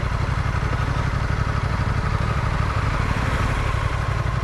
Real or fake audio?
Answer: real